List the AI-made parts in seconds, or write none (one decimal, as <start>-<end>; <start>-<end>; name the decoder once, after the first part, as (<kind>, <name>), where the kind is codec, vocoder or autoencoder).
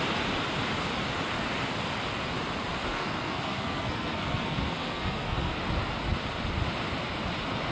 2.9-5.6 (codec, SNAC)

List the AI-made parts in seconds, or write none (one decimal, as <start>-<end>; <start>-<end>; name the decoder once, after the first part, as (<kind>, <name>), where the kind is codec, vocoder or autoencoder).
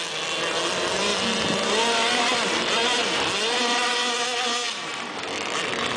none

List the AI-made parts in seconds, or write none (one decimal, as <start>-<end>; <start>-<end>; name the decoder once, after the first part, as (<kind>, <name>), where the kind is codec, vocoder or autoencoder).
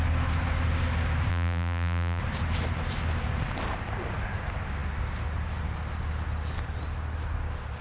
1.3-2.2 (vocoder, BigVGAN v2)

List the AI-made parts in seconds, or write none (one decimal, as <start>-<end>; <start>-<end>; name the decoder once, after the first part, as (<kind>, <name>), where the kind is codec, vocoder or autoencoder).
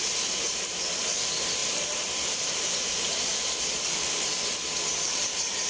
0.0-4.3 (vocoder, BigVGAN v2); 5.0-5.7